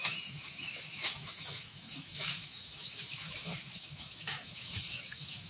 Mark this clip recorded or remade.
remade